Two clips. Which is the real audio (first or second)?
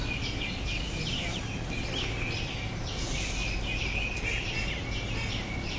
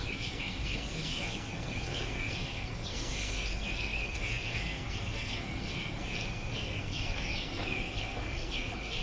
first